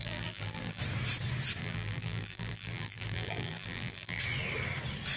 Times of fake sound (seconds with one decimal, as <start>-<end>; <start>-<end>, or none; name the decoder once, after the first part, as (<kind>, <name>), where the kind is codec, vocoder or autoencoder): 0.0-0.8 (vocoder, BigVGAN v2); 1.6-4.2